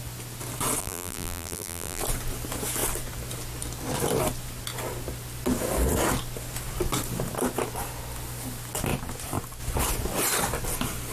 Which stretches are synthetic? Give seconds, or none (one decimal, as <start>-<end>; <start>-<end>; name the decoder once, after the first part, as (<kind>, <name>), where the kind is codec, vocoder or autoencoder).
0.8-2.0 (vocoder, BigVGAN v2)